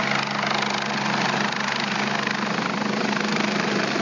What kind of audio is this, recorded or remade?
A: recorded